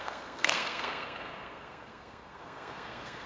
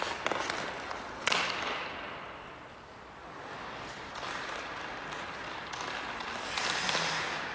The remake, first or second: first